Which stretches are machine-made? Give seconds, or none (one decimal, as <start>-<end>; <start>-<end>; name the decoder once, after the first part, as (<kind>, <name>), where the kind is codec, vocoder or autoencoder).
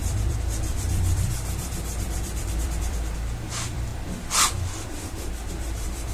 0.0-3.9 (vocoder, BigVGAN v2); 5.5-6.1